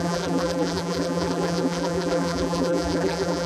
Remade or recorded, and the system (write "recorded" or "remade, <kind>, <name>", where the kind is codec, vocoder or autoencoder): remade, vocoder, BigVGAN v2